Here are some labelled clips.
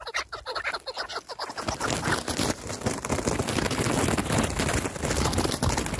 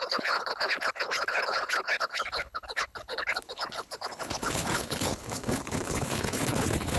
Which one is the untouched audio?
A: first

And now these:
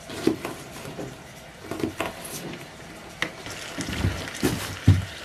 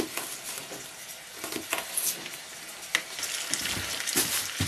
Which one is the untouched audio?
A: second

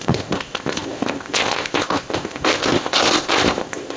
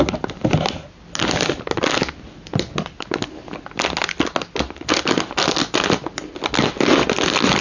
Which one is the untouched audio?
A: second